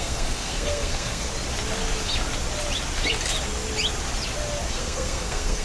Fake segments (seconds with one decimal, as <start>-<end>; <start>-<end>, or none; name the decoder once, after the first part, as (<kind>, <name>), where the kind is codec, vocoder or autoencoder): 0.0-1.3 (codec, SNAC); 4.7-5.6